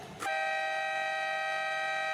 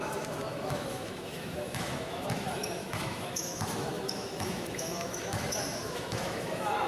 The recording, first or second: first